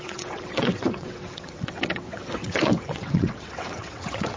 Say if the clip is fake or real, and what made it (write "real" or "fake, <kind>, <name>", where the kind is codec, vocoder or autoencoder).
fake, vocoder, WaveNeXt